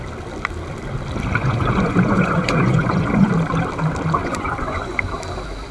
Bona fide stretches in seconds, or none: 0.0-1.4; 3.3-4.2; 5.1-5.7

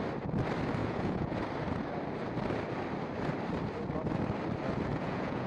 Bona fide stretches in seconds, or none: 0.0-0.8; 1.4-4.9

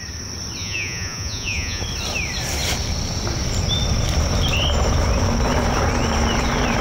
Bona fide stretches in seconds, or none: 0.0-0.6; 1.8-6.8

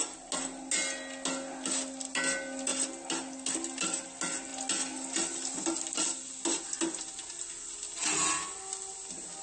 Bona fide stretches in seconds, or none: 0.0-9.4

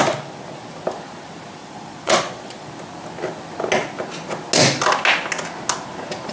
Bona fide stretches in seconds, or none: 0.0-1.6; 2.7-6.3